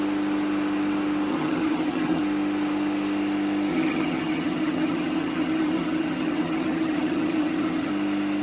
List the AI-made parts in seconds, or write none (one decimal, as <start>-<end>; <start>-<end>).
1.3-2.2; 3.7-7.9